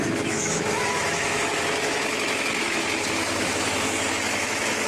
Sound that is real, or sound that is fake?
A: fake